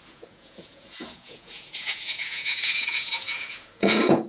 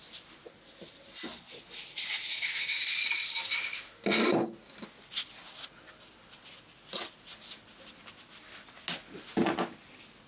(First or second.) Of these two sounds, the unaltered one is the second